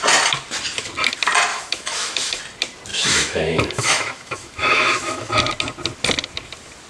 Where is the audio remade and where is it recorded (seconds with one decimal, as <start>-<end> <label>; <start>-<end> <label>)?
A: 0.0-1.5 recorded; 1.5-2.4 remade; 2.4-2.9 recorded; 2.9-5.3 remade; 5.3-6.9 recorded